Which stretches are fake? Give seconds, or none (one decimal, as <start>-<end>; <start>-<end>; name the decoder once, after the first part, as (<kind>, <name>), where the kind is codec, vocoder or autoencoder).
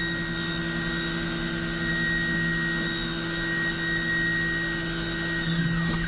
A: none